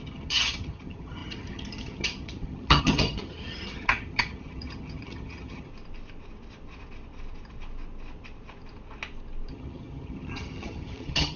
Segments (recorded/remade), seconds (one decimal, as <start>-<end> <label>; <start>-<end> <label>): 0.0-5.7 remade; 5.7-9.5 recorded; 9.5-11.4 remade